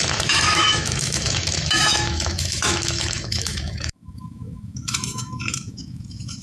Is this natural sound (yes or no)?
no